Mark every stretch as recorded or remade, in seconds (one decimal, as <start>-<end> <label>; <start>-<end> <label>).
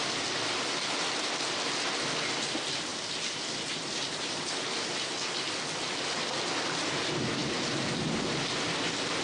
0.0-9.2 recorded